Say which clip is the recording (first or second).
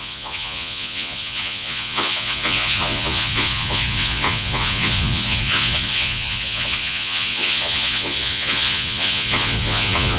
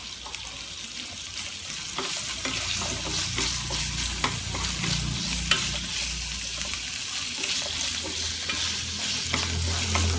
second